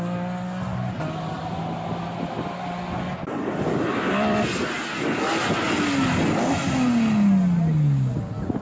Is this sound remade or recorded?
recorded